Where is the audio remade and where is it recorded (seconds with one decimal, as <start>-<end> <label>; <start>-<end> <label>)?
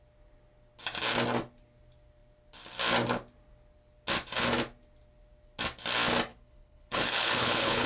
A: 0.0-6.3 recorded; 6.3-7.9 remade